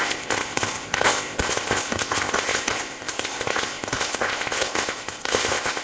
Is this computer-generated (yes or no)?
yes